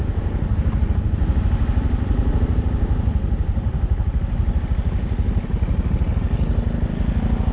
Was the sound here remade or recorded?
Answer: recorded